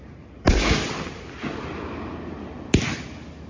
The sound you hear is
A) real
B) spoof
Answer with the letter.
A